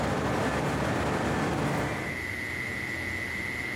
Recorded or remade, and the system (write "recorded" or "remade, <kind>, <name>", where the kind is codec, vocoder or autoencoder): recorded